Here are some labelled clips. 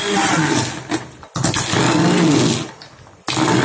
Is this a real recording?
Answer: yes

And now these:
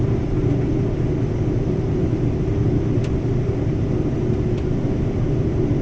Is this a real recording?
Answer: yes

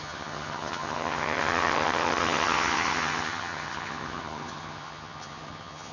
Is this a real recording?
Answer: no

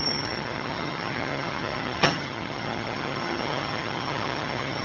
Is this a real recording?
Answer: no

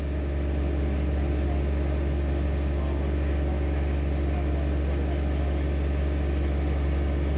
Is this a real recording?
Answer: yes